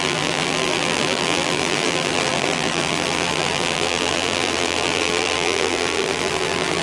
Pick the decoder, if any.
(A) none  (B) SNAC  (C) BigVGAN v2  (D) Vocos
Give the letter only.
C